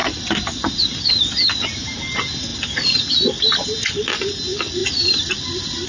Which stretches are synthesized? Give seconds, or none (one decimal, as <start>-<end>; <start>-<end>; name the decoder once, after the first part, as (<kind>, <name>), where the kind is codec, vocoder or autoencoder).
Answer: 0.0-1.1 (vocoder, BigVGAN v2); 2.5-3.0; 4.8-5.3